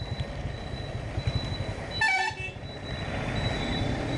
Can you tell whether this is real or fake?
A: real